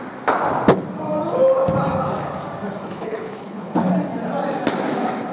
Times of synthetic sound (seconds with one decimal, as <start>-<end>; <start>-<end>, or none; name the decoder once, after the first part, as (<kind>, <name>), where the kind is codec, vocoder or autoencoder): 2.8-3.7 (codec, HILCodec)